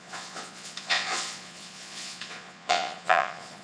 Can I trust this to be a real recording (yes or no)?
no